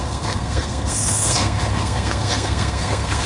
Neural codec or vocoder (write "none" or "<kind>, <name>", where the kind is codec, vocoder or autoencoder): codec, SNAC